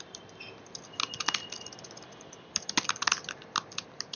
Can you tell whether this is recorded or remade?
recorded